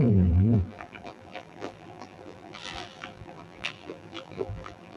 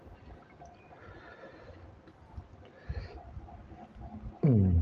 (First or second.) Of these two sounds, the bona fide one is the second